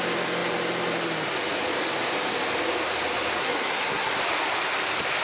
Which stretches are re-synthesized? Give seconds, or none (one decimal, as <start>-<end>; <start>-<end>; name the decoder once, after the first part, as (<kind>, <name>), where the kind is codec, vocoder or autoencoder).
3.4-4.1 (codec, SNAC)